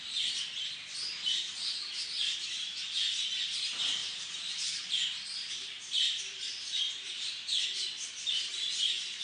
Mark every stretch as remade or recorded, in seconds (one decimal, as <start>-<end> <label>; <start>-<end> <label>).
0.0-4.0 recorded; 4.0-7.5 remade; 7.5-9.2 recorded